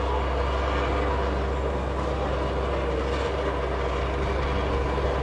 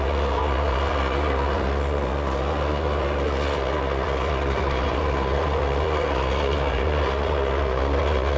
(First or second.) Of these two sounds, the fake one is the second